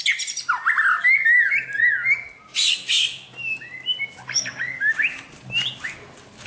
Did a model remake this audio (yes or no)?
no